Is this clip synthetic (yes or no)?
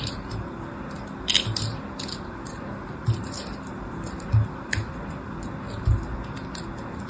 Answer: no